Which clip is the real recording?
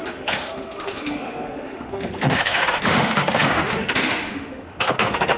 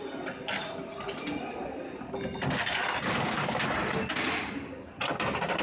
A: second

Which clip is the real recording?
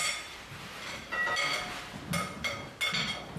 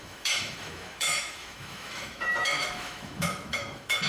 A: first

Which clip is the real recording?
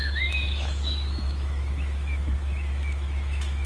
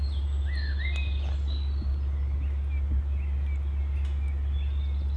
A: second